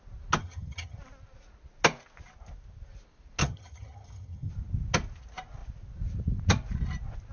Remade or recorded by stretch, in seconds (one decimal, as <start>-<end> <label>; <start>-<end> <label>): 0.0-0.4 recorded; 0.4-1.0 remade; 1.0-3.4 recorded; 3.4-4.5 remade; 4.5-7.3 recorded